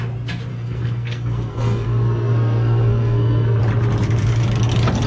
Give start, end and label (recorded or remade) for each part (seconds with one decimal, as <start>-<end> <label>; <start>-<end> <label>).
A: 0.0-0.5 recorded; 0.5-3.6 remade; 3.6-5.1 recorded